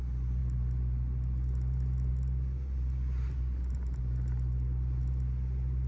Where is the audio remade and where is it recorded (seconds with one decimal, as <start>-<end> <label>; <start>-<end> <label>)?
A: 0.0-5.9 recorded